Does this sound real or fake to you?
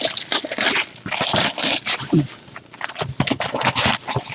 real